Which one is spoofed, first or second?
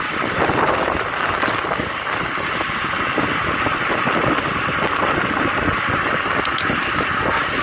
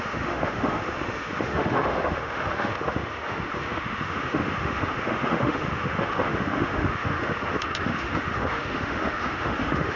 second